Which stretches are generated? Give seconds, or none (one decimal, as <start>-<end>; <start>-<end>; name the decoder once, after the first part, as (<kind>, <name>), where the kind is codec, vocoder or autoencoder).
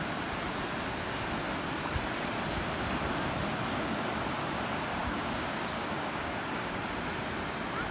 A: 4.9-6.7 (codec, DAC)